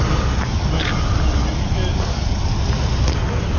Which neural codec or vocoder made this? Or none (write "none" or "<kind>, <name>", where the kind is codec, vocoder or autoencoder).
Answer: none